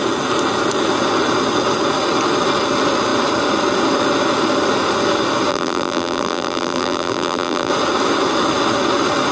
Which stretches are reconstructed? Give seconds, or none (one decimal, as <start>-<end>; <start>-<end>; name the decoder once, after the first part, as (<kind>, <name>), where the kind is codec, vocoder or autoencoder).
5.5-7.7 (vocoder, BigVGAN v2)